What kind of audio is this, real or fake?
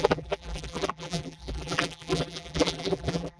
fake